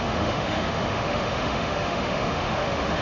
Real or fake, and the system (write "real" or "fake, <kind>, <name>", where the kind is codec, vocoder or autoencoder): fake, autoencoder, DAC-VAE